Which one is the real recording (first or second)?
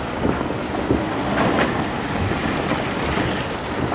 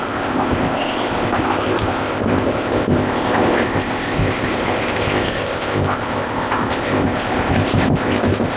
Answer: first